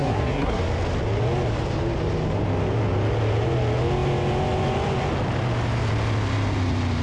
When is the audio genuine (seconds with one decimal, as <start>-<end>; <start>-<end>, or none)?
0.6-7.0